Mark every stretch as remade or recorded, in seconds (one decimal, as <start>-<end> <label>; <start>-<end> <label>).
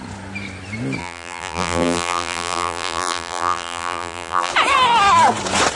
0.0-1.0 recorded; 1.0-4.5 remade; 4.5-5.8 recorded